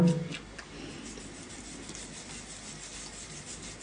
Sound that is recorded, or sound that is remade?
recorded